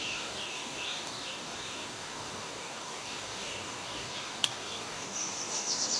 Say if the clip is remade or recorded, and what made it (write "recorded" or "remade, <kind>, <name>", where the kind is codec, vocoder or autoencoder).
remade, codec, DAC